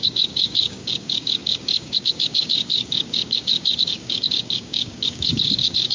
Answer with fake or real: fake